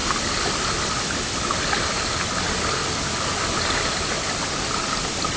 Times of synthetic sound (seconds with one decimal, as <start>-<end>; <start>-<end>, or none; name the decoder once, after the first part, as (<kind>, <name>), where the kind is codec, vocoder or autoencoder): none